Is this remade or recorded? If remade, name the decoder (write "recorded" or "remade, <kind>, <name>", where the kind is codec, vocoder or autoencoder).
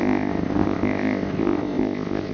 remade, codec, ZipCodec